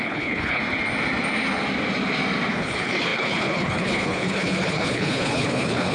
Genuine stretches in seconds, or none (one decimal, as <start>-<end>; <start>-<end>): 0.6-2.5